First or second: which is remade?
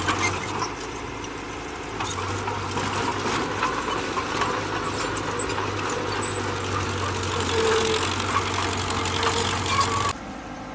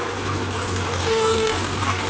second